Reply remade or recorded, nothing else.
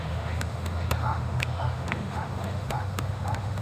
remade